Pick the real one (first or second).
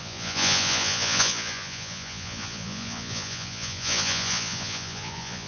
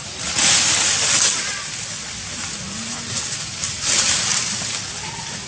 second